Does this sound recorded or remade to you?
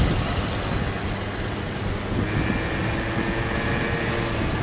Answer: recorded